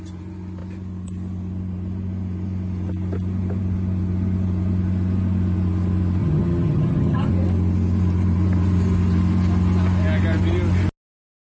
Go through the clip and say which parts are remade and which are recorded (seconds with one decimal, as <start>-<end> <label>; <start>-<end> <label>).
0.0-6.2 recorded; 6.2-7.3 remade; 7.3-11.4 recorded